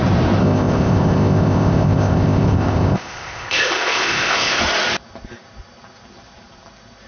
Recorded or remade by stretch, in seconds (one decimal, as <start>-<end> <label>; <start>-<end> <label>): 0.0-0.4 recorded; 0.4-4.6 remade; 4.6-7.1 recorded